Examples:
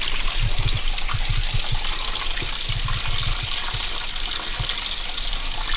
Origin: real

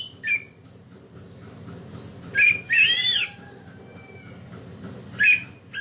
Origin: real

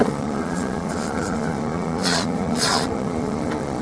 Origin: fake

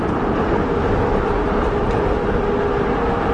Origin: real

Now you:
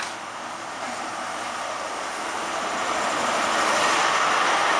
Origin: real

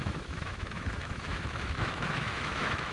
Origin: fake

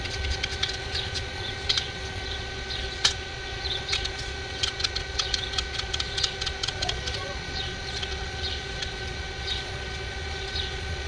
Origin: fake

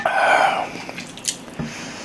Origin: real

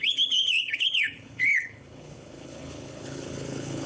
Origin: fake